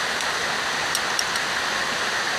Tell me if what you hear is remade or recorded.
recorded